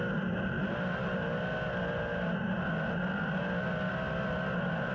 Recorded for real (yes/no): yes